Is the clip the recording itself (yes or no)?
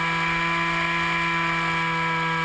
yes